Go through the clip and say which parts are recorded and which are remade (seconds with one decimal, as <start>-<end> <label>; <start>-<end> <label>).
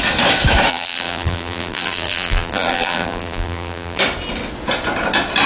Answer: 0.0-0.7 recorded; 0.7-4.0 remade; 4.0-5.5 recorded